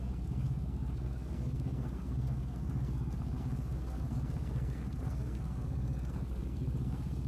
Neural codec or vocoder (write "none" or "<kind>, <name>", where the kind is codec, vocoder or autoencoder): codec, SNAC